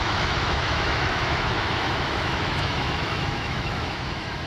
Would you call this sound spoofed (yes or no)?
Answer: yes